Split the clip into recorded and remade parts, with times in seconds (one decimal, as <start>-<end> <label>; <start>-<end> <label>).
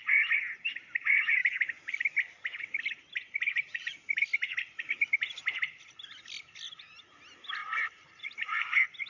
0.0-9.1 recorded